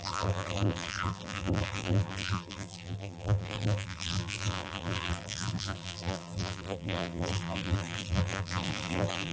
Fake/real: fake